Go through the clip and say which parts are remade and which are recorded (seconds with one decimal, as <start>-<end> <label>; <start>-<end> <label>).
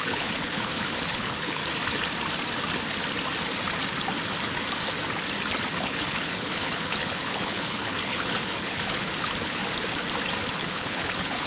0.0-1.6 remade; 1.6-5.8 recorded; 5.8-9.6 remade; 9.6-10.6 recorded; 10.6-11.5 remade